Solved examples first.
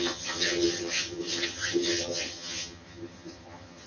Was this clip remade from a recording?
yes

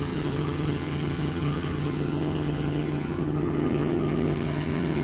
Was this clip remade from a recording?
yes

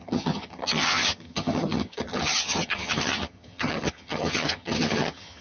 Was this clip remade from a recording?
yes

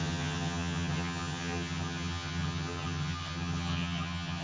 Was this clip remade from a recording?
yes